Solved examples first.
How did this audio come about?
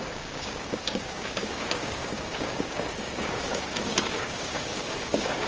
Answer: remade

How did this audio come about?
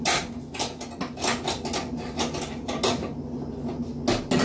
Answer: recorded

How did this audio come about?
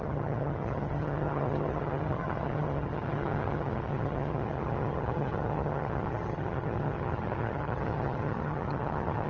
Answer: remade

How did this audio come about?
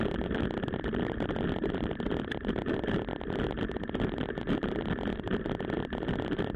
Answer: remade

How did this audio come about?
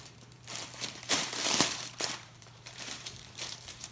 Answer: remade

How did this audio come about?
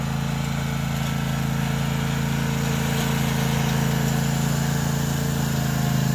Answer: recorded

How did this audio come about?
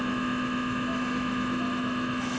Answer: remade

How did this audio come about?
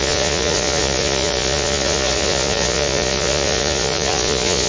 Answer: remade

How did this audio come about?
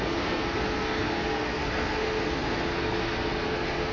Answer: remade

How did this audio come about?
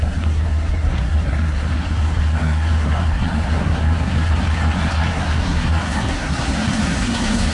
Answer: remade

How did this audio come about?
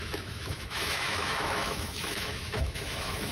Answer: remade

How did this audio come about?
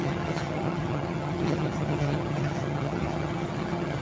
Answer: remade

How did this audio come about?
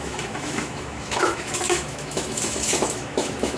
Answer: remade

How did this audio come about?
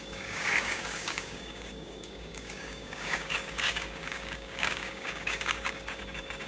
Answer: remade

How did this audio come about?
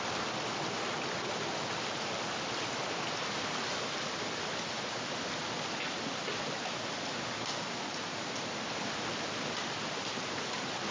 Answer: recorded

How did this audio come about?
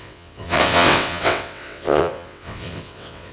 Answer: remade